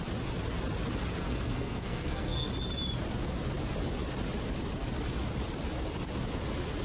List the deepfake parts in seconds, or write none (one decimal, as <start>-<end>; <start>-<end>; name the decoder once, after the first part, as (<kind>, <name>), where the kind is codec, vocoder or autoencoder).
1.2-2.5 (codec, SNAC)